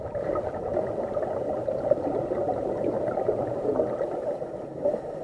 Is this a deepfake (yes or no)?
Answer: no